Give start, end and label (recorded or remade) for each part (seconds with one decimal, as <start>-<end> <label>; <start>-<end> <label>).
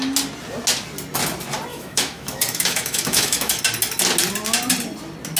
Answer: 0.0-1.7 recorded; 1.7-3.6 remade; 3.6-5.4 recorded